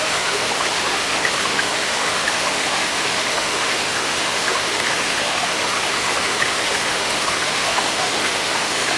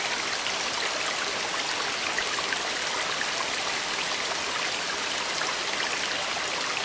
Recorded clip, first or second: second